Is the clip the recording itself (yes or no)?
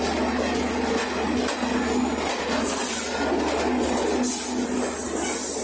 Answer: yes